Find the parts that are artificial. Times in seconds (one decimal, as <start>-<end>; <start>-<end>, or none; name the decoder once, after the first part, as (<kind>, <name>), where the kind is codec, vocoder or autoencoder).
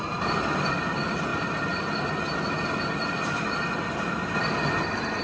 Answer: none